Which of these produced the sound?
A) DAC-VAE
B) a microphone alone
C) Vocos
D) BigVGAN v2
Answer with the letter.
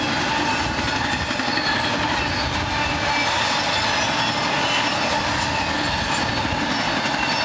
B